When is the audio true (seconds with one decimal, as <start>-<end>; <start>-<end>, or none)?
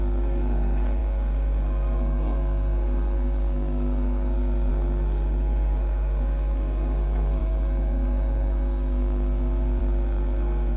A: none